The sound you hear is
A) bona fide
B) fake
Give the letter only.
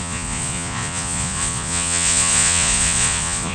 B